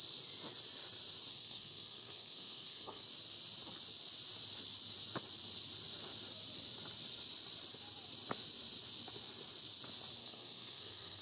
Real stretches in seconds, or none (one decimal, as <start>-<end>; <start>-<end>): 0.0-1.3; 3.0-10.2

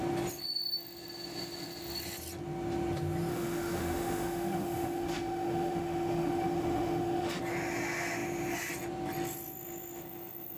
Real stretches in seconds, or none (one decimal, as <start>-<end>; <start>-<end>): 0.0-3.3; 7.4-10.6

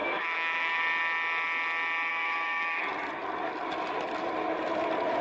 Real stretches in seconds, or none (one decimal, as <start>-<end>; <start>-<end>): 0.8-2.1; 2.8-5.2